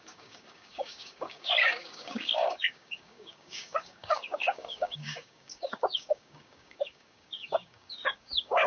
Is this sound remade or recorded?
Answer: remade